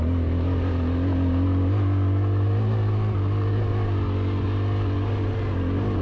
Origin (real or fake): real